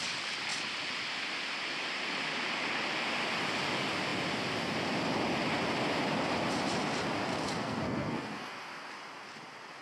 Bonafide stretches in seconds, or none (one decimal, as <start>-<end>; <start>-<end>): 0.0-7.6; 8.9-9.8